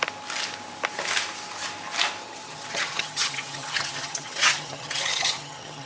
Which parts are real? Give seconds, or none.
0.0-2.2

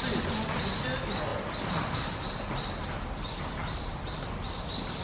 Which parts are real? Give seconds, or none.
0.0-5.0

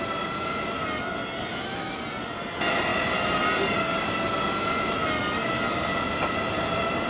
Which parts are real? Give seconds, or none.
0.0-1.5; 2.0-7.1

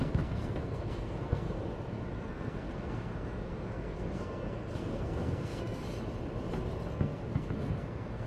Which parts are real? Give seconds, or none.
1.6-2.2; 5.8-6.9

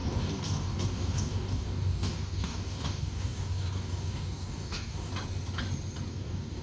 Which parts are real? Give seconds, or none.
5.1-6.1

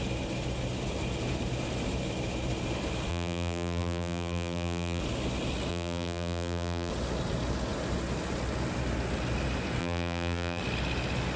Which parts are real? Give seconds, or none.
0.0-3.1; 5.0-5.7; 6.9-9.8; 10.6-11.4